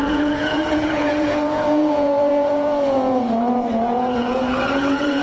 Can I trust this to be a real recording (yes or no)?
no